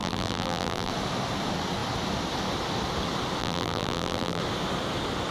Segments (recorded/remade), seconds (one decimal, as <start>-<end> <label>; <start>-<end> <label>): 0.0-0.9 remade; 0.9-3.4 recorded; 3.4-4.4 remade; 4.4-5.3 recorded